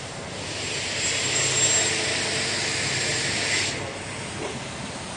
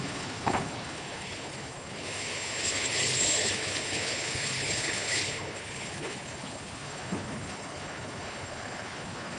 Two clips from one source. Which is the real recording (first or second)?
first